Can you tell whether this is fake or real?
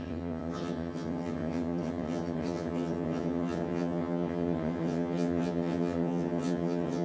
fake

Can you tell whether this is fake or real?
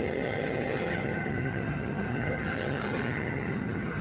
fake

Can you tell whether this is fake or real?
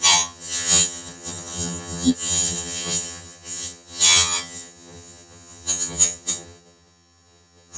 fake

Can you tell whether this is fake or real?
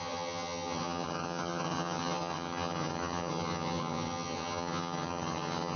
fake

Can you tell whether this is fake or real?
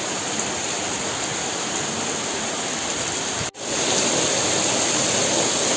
real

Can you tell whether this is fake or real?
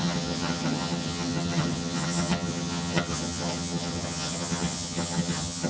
fake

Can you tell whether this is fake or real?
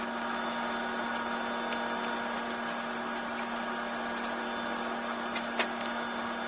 real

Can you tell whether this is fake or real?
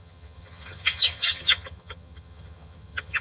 fake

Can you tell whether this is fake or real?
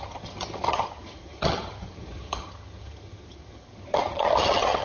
fake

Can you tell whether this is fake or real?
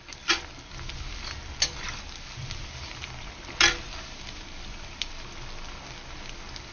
real